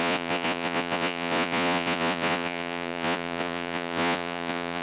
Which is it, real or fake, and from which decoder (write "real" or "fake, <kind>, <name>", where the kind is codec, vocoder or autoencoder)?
fake, vocoder, Vocos